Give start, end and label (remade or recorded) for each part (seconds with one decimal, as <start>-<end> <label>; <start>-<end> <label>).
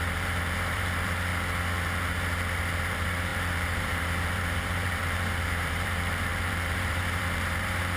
0.0-1.3 remade; 1.3-2.7 recorded; 2.7-8.0 remade